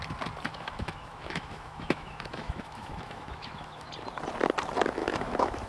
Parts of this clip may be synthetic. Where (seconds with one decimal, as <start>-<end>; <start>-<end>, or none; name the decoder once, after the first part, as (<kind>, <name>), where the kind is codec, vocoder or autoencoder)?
0.5-3.9 (autoencoder, DAC-VAE); 5.0-5.7